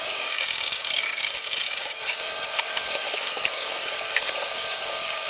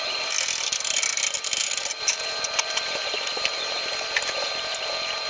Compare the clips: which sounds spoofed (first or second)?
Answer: first